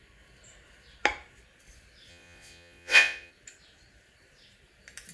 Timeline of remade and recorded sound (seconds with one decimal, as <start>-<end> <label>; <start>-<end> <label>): 0.0-2.1 recorded; 2.1-3.3 remade; 3.3-5.1 recorded

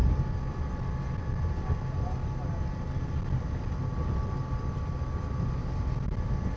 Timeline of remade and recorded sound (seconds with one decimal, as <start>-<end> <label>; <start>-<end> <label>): 0.0-6.6 recorded

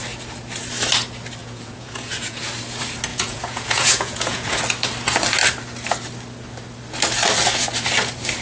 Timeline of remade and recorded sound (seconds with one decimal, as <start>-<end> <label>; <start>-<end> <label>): 0.0-1.4 recorded; 1.4-2.4 remade; 2.4-3.1 recorded; 3.1-4.6 remade; 4.6-8.4 recorded